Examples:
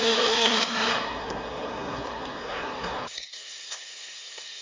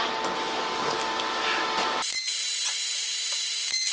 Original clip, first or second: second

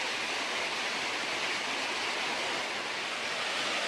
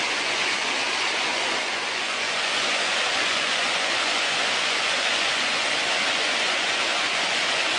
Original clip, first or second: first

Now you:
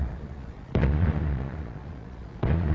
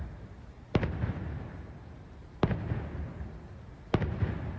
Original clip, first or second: second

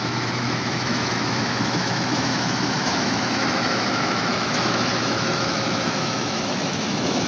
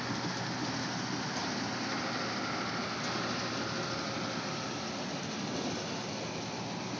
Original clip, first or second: second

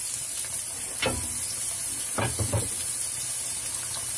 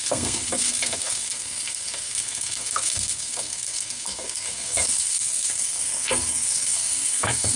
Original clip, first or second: first